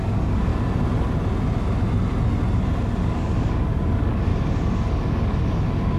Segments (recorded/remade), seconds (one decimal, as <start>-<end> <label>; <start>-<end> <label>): 0.0-0.5 remade; 0.5-3.0 recorded; 3.0-4.3 remade; 4.3-4.9 recorded; 4.9-6.0 remade